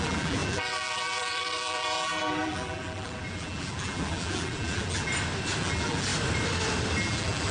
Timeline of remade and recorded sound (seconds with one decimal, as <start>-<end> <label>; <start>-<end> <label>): 0.0-5.1 remade; 5.1-5.6 recorded; 5.6-6.1 remade; 6.1-7.0 recorded; 7.0-7.5 remade